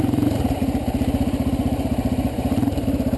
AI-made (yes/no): yes